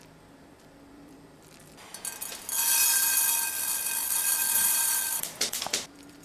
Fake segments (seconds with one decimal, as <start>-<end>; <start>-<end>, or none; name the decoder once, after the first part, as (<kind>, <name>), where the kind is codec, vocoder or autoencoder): 0.0-1.9 (vocoder, BigVGAN v2); 3.6-6.2